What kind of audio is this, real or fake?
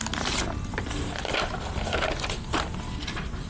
real